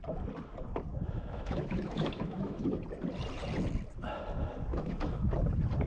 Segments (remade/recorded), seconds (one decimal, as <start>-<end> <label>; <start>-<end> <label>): 0.0-0.9 recorded; 0.9-2.8 remade; 2.8-4.7 recorded; 4.7-5.3 remade; 5.3-5.9 recorded